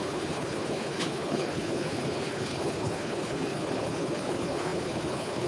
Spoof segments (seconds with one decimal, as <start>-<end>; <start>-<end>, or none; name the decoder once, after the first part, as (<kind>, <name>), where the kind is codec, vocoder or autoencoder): 0.0-5.5 (codec, HILCodec)